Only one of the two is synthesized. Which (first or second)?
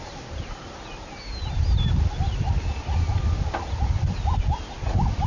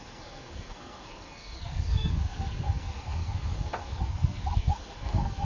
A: second